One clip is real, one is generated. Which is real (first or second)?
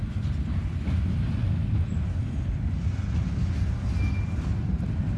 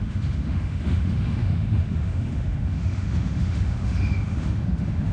first